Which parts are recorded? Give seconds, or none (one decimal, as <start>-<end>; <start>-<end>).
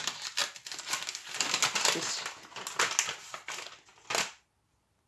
0.0-5.1